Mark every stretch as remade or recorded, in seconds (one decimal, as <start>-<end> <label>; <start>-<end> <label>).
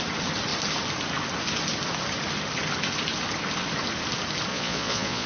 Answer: 0.0-4.5 recorded; 4.5-5.3 remade